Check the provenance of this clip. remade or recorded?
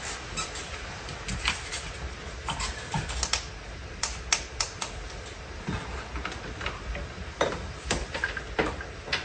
recorded